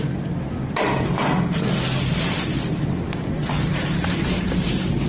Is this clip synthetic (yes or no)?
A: no